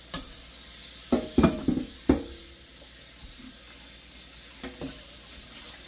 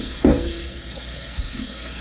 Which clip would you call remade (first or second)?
second